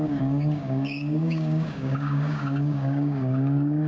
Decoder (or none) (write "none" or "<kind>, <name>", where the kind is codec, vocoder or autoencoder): codec, DAC